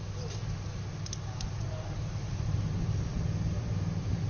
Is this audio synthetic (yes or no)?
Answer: no